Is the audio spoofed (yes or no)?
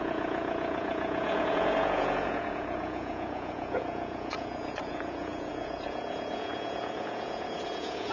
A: yes